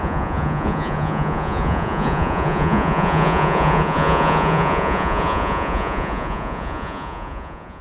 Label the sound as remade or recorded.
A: remade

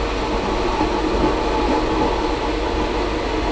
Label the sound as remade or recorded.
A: recorded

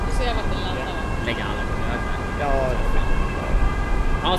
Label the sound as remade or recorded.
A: recorded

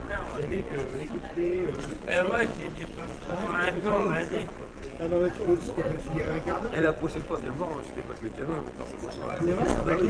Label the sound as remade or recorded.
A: remade